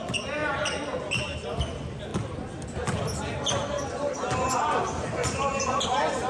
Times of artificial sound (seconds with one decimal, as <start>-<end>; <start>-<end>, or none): none